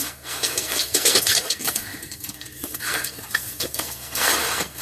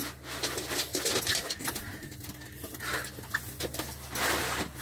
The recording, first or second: second